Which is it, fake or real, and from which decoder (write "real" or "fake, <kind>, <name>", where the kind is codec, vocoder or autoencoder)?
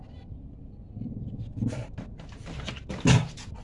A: real